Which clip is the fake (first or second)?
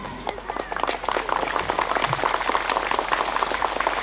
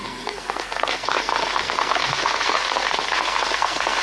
second